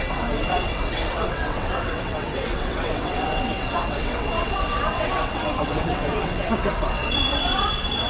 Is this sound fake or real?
fake